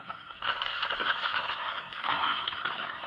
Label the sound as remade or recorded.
remade